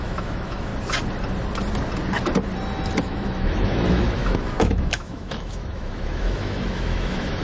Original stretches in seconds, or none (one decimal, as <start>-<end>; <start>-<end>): 0.7-3.0